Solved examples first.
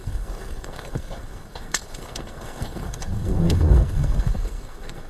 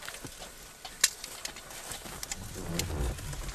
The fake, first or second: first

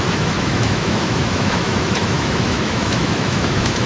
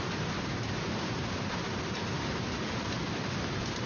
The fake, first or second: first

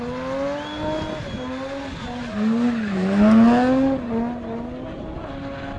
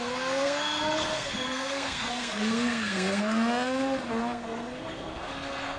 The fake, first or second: second